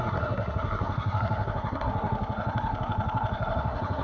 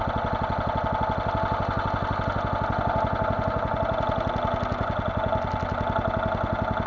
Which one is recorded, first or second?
second